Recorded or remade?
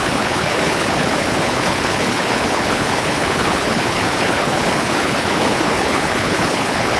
remade